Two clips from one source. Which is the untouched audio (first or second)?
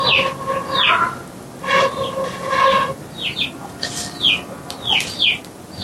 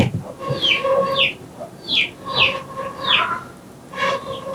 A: first